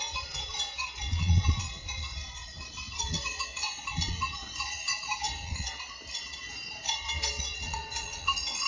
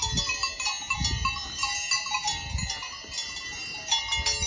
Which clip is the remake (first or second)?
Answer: first